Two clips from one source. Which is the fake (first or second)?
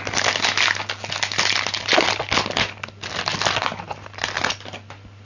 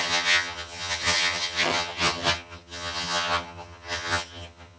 second